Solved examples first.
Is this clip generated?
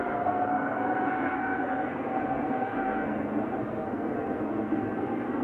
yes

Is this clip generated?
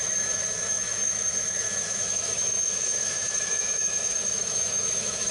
yes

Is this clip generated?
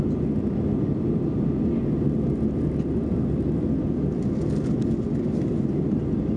no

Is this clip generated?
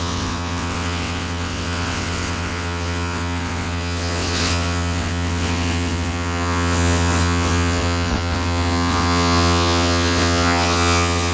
yes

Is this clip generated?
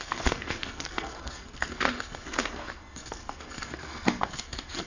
yes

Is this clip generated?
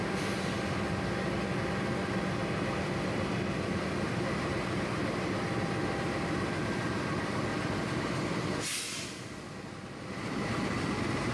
no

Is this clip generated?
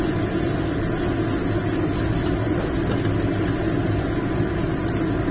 no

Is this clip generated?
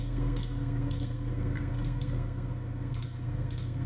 yes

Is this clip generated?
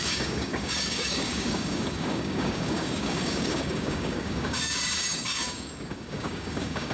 yes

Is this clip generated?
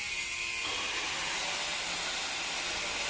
no